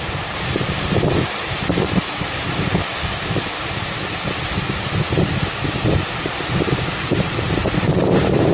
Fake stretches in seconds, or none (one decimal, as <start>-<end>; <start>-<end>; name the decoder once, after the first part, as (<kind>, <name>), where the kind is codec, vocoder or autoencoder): 0.0-2.9 (vocoder, BigVGAN v2); 6.3-8.5